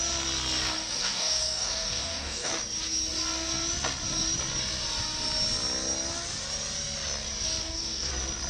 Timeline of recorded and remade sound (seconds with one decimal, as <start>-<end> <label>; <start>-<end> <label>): 0.0-1.0 recorded; 1.0-2.5 remade; 2.5-7.6 recorded; 7.6-8.1 remade; 8.1-8.5 recorded